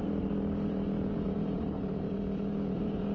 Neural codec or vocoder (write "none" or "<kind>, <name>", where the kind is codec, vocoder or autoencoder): vocoder, BigVGAN v2